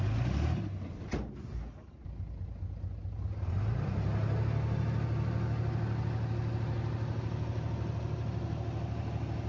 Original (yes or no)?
yes